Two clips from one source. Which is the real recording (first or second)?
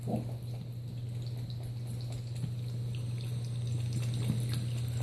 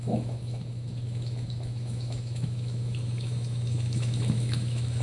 first